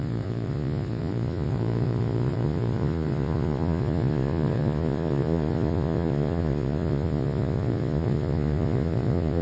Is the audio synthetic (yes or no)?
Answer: yes